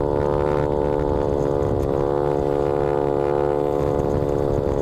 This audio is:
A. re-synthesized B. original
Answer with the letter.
B